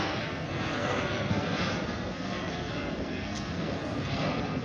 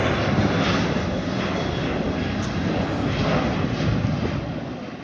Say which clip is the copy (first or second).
first